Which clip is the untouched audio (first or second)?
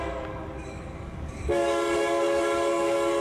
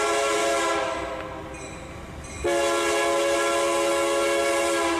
second